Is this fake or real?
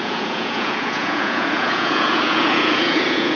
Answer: fake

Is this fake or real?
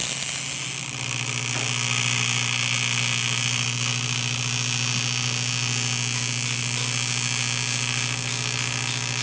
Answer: real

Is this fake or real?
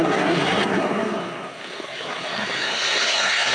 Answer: fake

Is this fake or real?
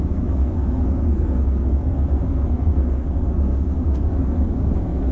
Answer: fake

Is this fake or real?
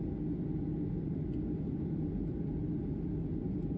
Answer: real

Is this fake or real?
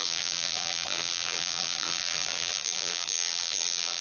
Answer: fake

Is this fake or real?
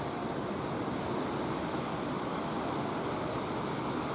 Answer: real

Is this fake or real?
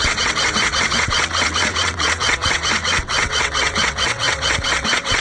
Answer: fake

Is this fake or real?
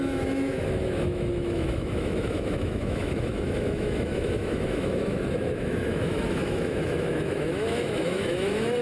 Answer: fake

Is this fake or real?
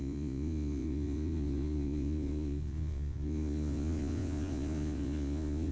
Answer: fake